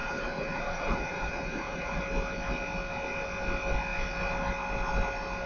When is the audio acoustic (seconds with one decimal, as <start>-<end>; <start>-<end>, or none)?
2.0-5.5